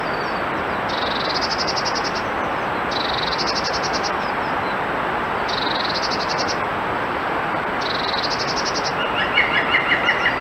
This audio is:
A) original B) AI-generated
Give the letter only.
A